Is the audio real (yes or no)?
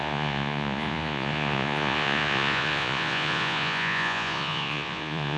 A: no